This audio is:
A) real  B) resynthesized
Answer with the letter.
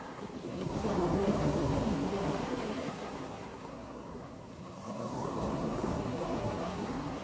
B